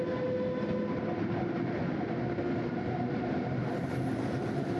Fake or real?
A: real